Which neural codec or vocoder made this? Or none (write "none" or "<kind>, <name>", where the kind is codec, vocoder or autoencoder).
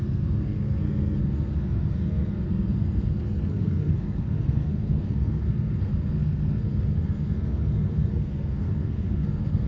codec, SNAC